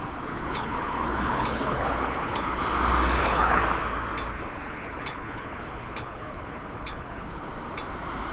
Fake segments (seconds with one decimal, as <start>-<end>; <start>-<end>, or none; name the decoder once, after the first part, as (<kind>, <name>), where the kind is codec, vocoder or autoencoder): 0.0-2.6 (codec, HILCodec); 3.2-3.6; 4.3-7.5